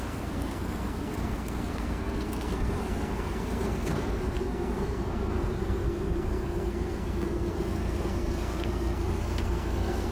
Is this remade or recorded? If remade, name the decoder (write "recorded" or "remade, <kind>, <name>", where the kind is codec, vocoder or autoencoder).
remade, codec, SNAC